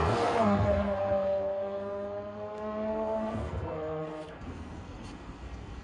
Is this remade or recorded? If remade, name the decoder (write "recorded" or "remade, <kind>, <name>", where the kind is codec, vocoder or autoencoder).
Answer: remade, codec, SNAC